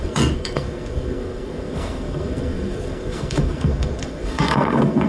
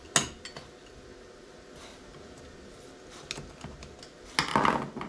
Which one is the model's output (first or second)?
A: first